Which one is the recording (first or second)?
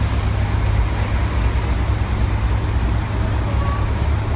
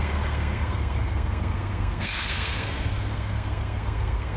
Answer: first